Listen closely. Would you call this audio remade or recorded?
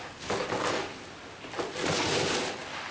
recorded